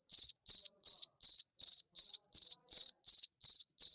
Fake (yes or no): yes